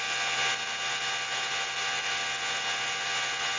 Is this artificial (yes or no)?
no